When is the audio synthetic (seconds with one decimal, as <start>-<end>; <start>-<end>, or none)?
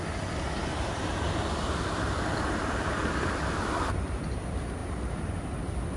0.6-4.2; 4.8-5.3